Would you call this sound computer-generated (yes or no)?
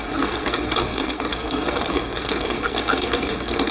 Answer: yes